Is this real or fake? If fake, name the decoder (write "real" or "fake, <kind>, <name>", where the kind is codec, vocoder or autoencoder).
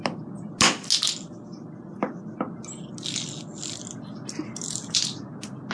real